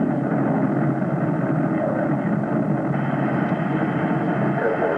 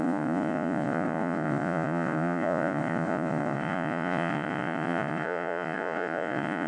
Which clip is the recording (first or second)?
first